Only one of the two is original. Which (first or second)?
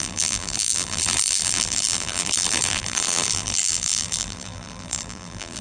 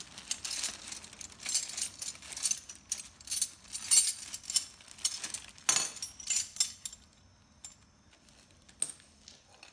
second